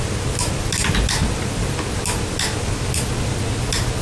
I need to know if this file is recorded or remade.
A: recorded